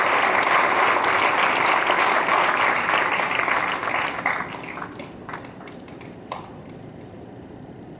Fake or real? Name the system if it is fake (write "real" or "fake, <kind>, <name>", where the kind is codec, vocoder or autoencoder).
real